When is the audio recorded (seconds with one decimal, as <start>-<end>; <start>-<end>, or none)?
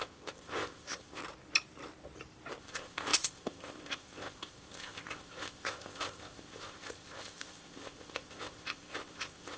1.2-2.6